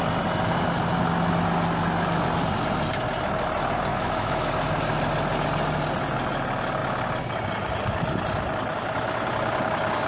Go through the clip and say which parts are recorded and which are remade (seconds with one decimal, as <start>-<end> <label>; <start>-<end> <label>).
0.0-3.9 recorded; 3.9-4.5 remade; 4.5-10.1 recorded